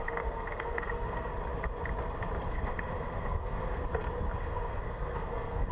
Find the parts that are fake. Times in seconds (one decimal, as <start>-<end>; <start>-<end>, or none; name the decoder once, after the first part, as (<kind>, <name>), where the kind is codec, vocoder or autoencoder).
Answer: 0.0-1.3 (codec, SNAC); 2.5-3.8; 4.4-5.7